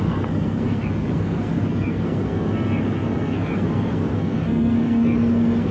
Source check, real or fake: fake